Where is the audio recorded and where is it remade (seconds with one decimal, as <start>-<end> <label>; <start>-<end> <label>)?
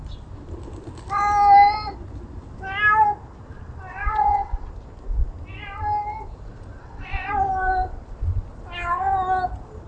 0.0-3.9 recorded; 3.9-4.7 remade; 4.7-6.8 recorded; 6.8-7.3 remade; 7.3-9.9 recorded